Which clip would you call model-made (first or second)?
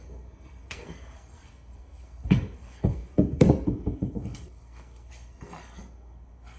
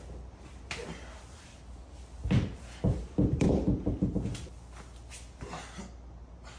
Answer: first